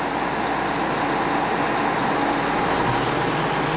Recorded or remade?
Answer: recorded